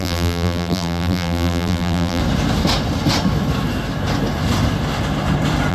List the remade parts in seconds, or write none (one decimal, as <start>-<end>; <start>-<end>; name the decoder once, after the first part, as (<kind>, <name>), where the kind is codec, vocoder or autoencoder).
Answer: 0.0-2.2 (vocoder, BigVGAN v2)